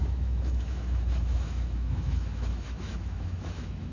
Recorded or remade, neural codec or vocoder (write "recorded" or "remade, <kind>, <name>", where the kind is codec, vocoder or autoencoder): remade, autoencoder, DAC-VAE